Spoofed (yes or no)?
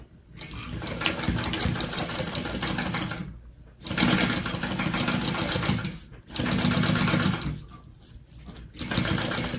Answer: no